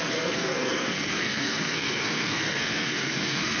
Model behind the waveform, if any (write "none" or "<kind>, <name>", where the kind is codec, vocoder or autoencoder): codec, SNAC